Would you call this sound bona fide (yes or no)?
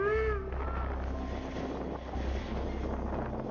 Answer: yes